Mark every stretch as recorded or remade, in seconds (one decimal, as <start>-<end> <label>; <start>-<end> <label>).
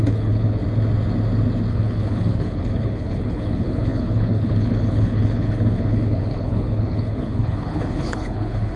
0.0-0.6 remade; 0.6-1.7 recorded; 1.7-8.8 remade